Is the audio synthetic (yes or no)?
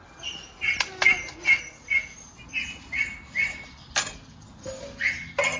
no